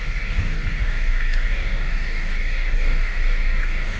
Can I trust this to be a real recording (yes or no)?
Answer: no